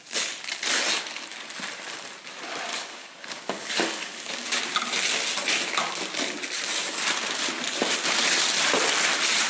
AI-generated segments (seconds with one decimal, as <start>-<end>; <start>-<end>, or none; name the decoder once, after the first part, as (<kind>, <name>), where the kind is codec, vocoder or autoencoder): 2.7-4.6 (codec, DAC)